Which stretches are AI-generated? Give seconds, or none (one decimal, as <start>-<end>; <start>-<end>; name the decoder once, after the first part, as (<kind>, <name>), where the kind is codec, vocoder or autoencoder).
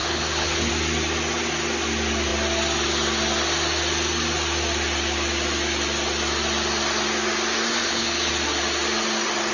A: 0.0-0.7 (codec, HILCodec); 7.8-8.3